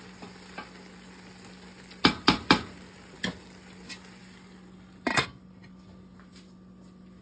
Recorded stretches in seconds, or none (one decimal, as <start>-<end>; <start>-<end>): 0.0-7.2